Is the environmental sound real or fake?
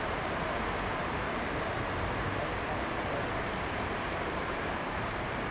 fake